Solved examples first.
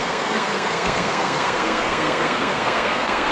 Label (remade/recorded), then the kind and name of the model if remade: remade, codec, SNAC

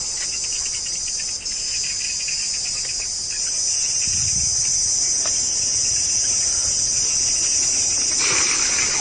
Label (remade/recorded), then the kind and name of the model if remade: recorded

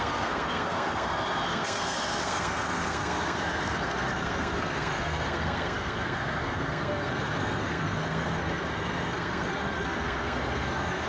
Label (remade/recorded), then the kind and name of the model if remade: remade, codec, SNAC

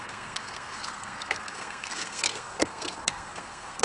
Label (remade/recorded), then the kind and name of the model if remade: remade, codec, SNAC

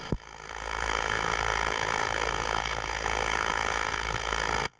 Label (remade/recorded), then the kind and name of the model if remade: remade, codec, SNAC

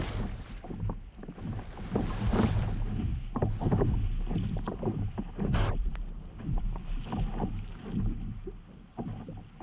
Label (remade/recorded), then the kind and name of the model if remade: recorded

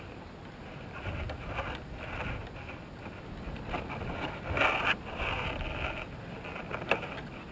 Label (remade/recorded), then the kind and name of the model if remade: recorded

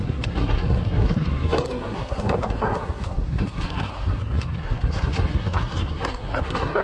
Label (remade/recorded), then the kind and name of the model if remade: remade, codec, SNAC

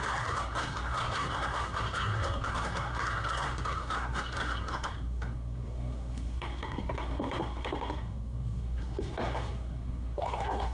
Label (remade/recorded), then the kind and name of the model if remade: remade, codec, SNAC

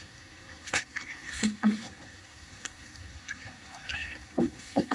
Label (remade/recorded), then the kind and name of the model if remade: remade, codec, SNAC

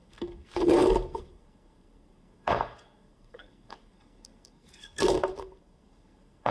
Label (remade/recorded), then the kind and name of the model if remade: remade, codec, SNAC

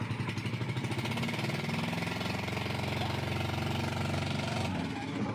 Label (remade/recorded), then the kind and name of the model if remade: recorded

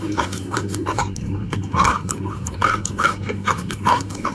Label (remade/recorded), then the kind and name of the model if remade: remade, codec, SNAC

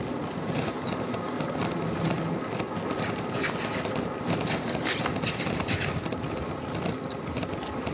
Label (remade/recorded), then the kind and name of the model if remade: recorded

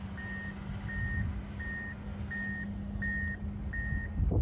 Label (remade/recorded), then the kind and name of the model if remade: recorded